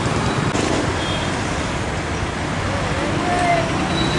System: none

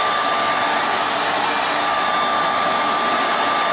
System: none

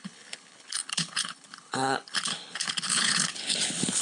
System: codec, HILCodec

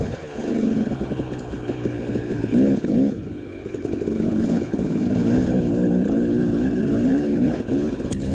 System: codec, HILCodec